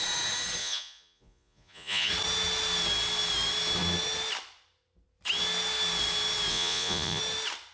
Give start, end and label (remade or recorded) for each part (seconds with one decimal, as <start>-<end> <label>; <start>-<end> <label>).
0.0-0.6 recorded; 0.6-2.1 remade; 2.1-6.5 recorded; 6.5-7.2 remade; 7.2-7.7 recorded